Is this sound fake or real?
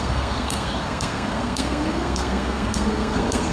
fake